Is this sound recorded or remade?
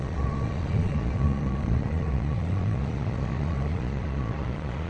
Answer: remade